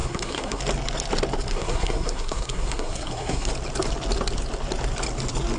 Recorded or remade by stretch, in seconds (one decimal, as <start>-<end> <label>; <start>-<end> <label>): 0.0-0.6 remade; 0.6-1.5 recorded; 1.5-3.5 remade; 3.5-5.6 recorded